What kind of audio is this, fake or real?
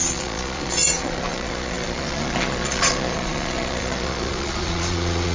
fake